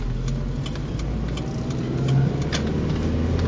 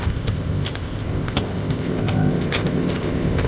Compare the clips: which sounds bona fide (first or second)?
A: first